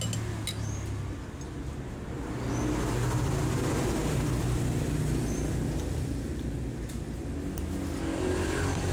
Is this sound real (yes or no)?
yes